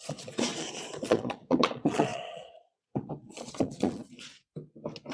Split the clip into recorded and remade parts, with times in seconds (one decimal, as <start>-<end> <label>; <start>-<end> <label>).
0.0-4.3 remade; 4.3-5.1 recorded